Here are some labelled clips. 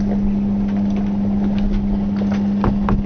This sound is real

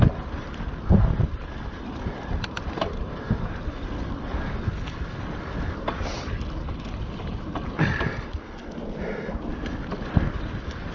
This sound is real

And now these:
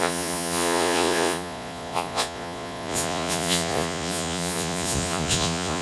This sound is fake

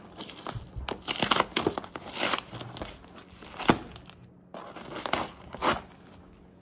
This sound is real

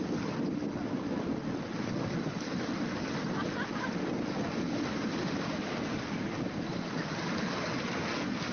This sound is fake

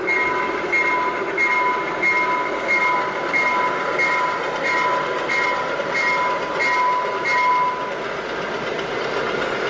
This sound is real